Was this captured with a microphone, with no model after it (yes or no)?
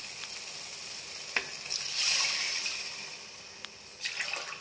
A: yes